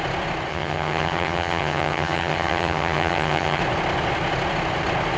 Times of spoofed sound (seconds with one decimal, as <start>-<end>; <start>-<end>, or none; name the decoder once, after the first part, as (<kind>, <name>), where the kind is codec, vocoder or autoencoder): 0.5-3.6 (vocoder, HiFi-GAN)